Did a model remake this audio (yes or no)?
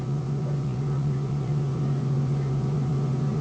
yes